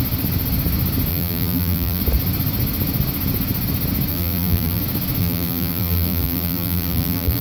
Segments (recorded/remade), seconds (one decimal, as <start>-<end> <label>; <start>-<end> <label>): 0.0-1.1 recorded; 1.1-2.0 remade; 2.0-4.1 recorded; 4.1-4.8 remade; 4.8-5.2 recorded; 5.2-7.4 remade